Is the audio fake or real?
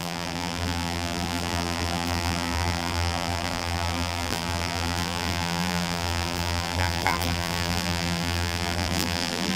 fake